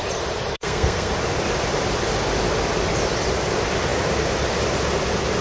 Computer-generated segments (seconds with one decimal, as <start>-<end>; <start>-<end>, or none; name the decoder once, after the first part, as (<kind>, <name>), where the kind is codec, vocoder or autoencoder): 0.5-1.1 (codec, SNAC)